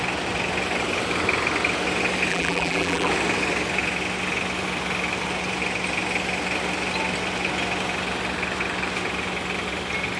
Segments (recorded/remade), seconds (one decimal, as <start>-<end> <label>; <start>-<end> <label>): 0.0-2.3 recorded; 2.3-3.1 remade; 3.1-10.2 recorded